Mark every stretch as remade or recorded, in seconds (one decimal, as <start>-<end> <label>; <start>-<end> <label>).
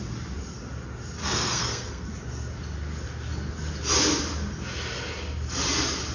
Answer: 0.0-1.2 recorded; 1.2-2.1 remade; 2.1-6.1 recorded